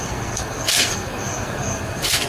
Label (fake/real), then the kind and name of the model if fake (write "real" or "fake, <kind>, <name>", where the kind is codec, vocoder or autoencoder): fake, codec, SNAC